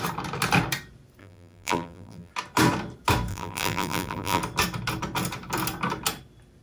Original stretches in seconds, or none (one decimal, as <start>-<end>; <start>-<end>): 0.0-1.2; 2.3-3.3; 4.4-6.6